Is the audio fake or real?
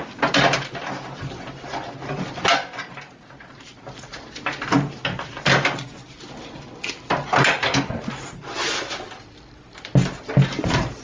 real